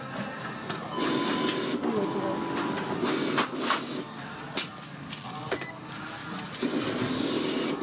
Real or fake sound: real